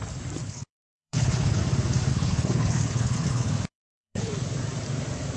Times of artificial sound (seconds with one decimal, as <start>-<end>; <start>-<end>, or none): 0.4-1.6; 2.1-4.3